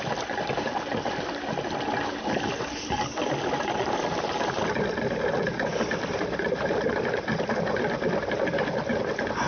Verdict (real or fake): real